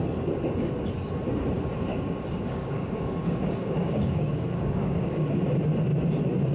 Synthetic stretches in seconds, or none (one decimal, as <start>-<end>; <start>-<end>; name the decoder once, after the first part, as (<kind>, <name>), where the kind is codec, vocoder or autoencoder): 1.9-5.3 (codec, DAC)